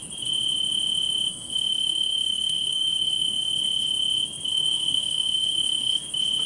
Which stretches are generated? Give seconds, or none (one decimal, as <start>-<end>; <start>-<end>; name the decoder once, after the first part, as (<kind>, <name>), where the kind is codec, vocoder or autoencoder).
1.3-3.5 (codec, SNAC); 4.5-6.0